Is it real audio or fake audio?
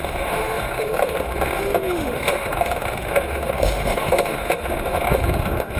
fake